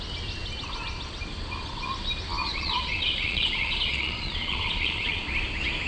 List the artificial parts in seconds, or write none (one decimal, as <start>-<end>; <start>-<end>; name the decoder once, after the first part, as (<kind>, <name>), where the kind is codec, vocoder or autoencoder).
2.4-5.2 (vocoder, Vocos)